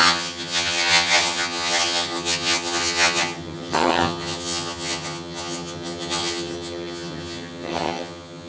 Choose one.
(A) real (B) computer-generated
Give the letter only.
B